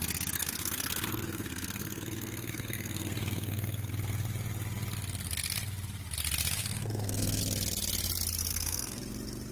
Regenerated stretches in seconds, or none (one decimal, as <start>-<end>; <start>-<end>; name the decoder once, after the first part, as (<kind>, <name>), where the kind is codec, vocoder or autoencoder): 0.4-3.9 (codec, SNAC); 6.6-7.4; 8.5-9.0